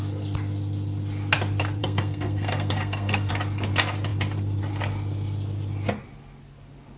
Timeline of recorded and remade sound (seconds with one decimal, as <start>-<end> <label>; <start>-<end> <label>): 0.0-1.8 recorded; 1.8-3.3 remade; 3.3-7.0 recorded